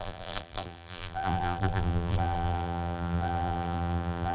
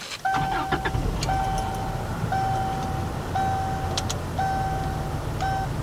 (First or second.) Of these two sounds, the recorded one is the second